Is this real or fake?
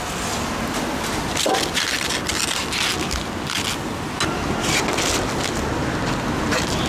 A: real